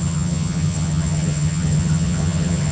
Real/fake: fake